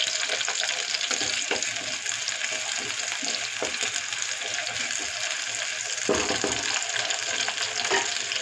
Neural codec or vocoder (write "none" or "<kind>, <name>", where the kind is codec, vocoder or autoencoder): none